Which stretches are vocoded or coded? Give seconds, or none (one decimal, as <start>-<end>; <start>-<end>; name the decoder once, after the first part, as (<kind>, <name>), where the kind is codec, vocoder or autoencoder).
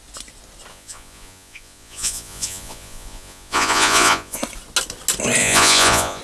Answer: 0.7-4.4 (vocoder, Vocos); 5.4-6.2